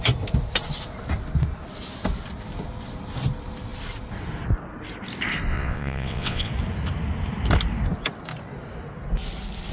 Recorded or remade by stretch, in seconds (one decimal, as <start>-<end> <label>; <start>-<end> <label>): 0.0-5.5 recorded; 5.5-6.5 remade; 6.5-9.7 recorded